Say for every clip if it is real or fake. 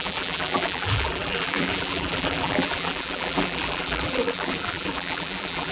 fake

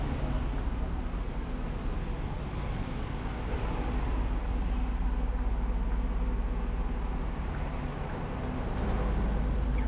real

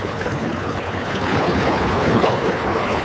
fake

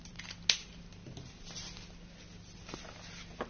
real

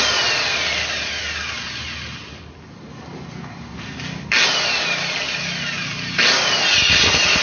real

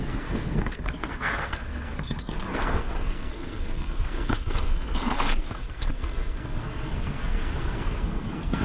fake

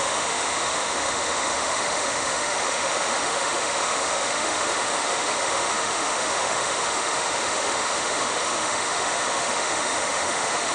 fake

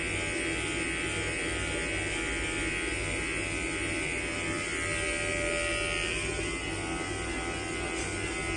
real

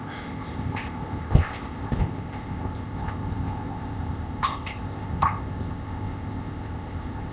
fake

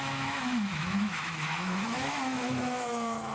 fake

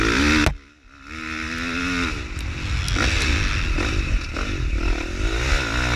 real